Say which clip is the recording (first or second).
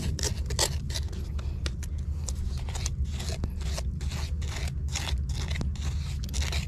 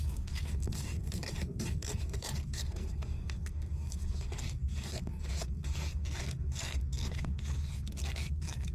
first